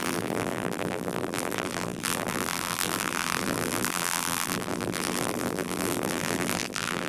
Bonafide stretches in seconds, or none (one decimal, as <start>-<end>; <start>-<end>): none